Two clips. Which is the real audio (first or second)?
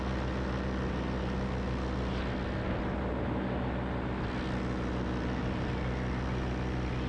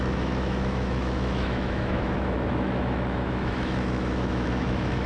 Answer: first